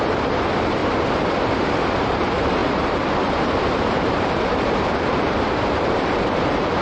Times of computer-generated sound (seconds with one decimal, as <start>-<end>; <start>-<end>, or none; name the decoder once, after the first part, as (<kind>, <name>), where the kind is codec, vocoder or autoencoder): 0.0-0.8 (vocoder, BigVGAN v2); 2.0-6.8